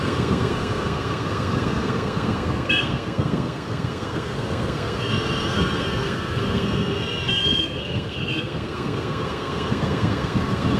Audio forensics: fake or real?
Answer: fake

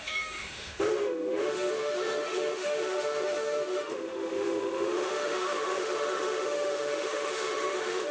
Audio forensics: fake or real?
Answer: fake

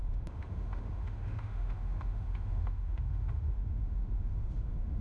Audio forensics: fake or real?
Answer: fake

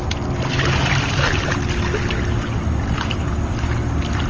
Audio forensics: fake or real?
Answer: real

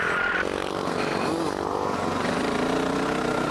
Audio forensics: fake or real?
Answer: real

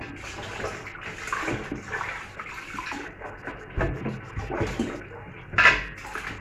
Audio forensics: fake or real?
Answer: real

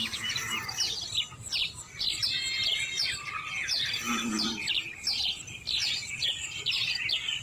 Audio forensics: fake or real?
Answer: real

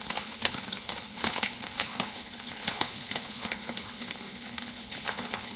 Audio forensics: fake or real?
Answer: fake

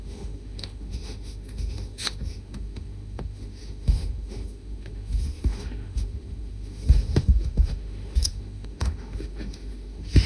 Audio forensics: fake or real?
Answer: fake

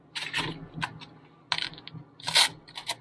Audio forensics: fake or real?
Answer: real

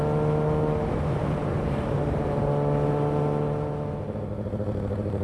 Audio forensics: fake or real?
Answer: real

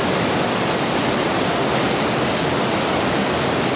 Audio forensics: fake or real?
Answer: real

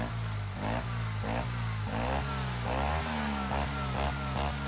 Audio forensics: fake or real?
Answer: real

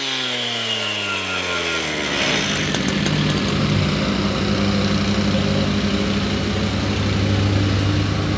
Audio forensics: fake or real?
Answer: real